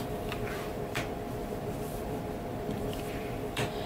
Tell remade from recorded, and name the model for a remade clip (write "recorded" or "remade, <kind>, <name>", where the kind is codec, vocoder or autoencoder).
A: remade, vocoder, BigVGAN v2